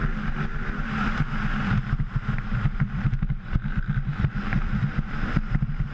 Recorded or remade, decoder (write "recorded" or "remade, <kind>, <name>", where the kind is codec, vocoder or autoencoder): recorded